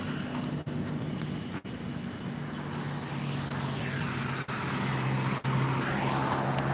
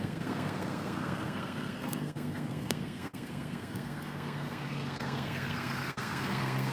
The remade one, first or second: second